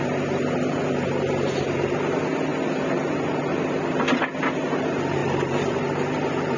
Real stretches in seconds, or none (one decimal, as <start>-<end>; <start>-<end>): 0.0-5.2